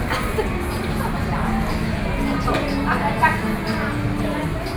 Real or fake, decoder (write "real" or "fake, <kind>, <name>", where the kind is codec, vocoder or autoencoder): real